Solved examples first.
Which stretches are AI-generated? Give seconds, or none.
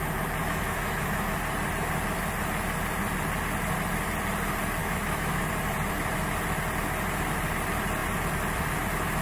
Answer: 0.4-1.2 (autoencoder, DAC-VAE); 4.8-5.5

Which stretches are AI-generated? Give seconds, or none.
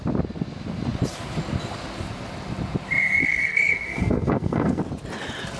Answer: 3.2-4.8 (codec, SNAC)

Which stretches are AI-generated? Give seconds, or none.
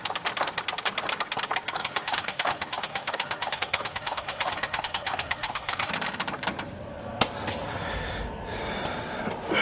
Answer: 1.8-5.9 (autoencoder, DAC-VAE)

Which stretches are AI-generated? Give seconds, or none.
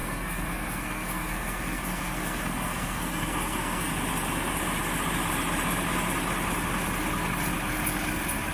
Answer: 0.0-3.9 (codec, SNAC)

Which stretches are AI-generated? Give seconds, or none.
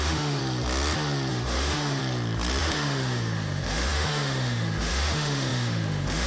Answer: 0.0-0.4 (autoencoder, DAC-VAE); 1.3-2.0; 2.6-6.3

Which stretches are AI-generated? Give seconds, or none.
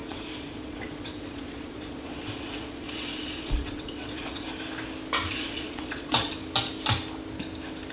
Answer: 0.0-4.5 (vocoder, Vocos); 5.3-6.3